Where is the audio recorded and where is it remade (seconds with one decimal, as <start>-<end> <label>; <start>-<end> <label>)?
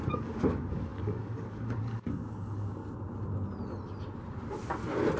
0.0-2.8 remade; 2.8-5.2 recorded